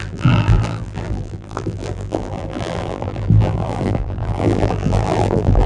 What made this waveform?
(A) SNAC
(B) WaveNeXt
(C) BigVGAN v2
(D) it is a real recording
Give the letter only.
C